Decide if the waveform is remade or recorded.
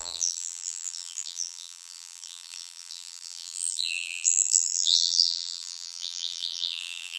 remade